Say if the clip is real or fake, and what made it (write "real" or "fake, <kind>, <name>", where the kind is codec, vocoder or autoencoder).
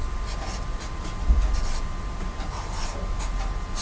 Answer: real